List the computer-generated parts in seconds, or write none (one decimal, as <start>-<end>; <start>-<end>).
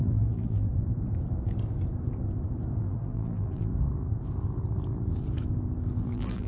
0.0-0.7; 2.8-3.7; 6.0-6.5